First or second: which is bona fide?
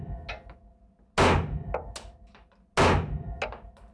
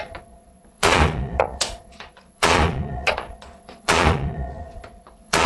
first